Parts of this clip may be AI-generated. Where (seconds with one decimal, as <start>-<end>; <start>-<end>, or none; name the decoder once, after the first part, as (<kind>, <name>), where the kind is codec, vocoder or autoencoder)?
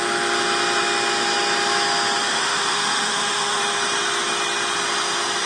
2.2-3.6 (autoencoder, DAC-VAE)